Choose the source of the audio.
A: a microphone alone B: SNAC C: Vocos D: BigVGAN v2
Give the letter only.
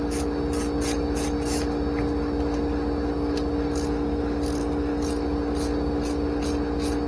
A